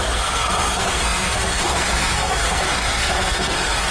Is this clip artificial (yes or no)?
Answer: yes